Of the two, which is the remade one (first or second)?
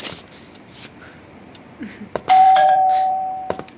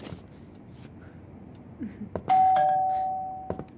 first